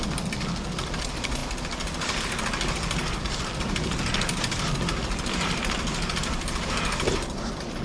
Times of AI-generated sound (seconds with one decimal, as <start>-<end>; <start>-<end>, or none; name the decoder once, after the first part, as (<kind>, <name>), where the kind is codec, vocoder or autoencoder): none